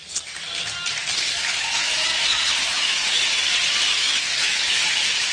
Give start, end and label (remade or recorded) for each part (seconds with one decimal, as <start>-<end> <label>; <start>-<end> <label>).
0.0-1.4 recorded; 1.4-3.2 remade; 3.2-3.9 recorded; 3.9-5.3 remade